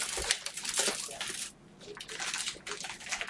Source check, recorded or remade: recorded